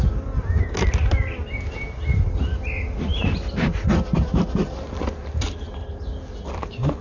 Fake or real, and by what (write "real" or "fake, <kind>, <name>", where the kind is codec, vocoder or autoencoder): real